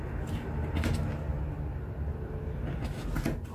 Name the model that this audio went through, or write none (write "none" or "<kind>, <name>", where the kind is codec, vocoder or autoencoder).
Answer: none